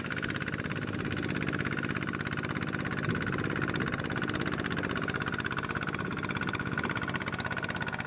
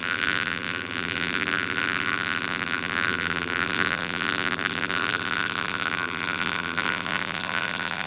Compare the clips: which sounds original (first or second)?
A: first